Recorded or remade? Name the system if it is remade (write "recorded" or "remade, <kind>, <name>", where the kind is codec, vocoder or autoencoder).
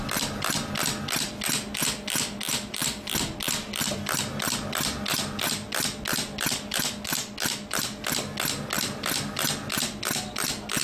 recorded